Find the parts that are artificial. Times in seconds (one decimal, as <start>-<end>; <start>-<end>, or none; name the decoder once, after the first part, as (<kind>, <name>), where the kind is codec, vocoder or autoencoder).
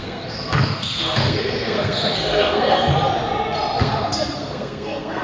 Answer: 0.0-2.9 (codec, SNAC); 3.8-5.2